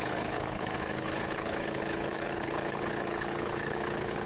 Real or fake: fake